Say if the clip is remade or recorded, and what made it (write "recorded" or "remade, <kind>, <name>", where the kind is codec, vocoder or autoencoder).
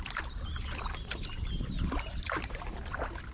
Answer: recorded